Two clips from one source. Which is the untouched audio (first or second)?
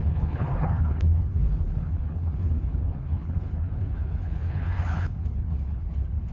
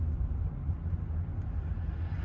second